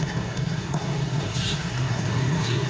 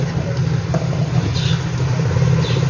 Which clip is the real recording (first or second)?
second